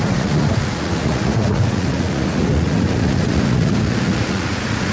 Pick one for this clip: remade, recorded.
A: remade